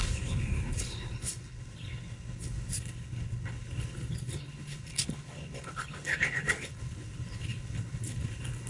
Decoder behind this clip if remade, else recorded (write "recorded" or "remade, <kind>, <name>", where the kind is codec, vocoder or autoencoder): remade, codec, HILCodec